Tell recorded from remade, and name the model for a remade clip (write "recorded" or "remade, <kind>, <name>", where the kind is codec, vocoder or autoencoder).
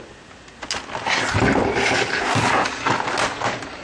recorded